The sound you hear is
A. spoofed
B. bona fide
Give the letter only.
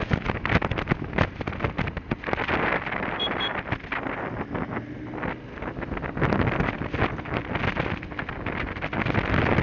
B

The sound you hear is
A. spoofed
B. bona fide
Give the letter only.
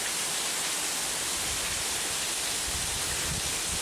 B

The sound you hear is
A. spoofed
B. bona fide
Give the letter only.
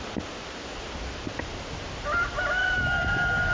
B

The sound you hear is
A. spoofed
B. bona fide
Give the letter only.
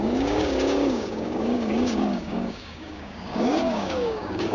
A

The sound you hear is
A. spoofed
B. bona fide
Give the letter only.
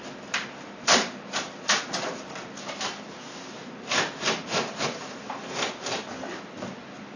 B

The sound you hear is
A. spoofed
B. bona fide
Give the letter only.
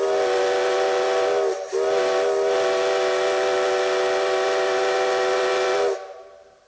B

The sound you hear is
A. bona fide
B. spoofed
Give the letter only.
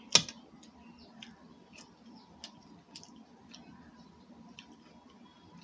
A